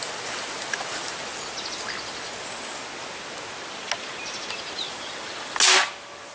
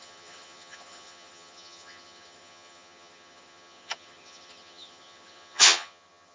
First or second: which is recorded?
first